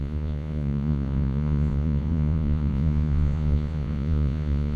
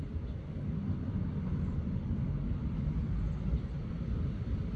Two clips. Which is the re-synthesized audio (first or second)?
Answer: first